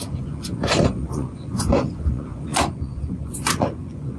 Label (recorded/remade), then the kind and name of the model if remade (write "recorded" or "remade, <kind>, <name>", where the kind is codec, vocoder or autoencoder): remade, vocoder, Vocos